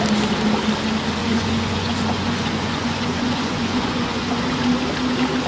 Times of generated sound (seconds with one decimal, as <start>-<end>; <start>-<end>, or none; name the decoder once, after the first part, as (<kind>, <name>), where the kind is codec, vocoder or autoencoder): 1.2-4.5 (vocoder, Vocos)